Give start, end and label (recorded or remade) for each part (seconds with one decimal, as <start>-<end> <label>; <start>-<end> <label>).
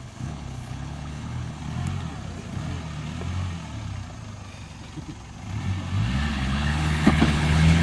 0.0-1.6 remade; 1.6-6.3 recorded; 6.3-7.8 remade